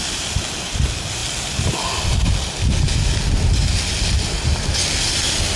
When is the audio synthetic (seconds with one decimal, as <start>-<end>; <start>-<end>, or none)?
none